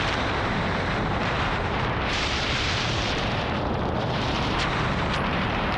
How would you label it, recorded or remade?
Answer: remade